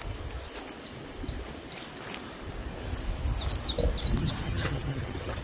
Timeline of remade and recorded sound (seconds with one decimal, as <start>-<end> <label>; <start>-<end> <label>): 0.0-4.2 recorded; 4.2-5.4 remade